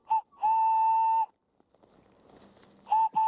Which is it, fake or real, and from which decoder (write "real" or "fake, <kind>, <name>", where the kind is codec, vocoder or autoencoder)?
real